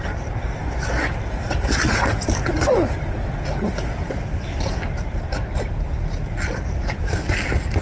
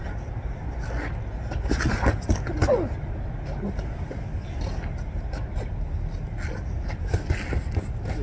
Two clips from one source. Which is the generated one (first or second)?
first